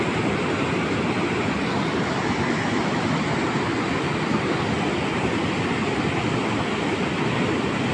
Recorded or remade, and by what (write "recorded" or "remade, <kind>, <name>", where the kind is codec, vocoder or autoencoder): recorded